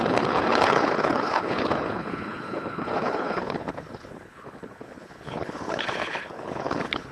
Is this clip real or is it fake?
fake